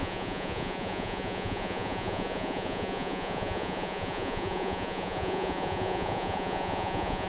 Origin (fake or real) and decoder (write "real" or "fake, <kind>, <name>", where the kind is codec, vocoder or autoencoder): fake, vocoder, Vocos